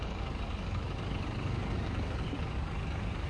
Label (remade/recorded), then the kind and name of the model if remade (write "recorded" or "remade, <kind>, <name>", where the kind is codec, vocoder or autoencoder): remade, codec, DAC